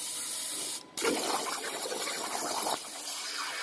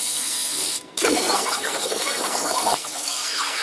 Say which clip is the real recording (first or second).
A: first